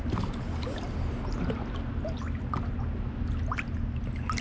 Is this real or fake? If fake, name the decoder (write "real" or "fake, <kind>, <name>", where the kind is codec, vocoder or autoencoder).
real